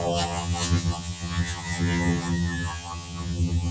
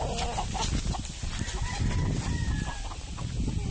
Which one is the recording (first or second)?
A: second